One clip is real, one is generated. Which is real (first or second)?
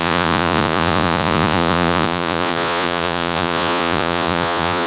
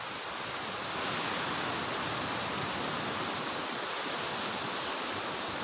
second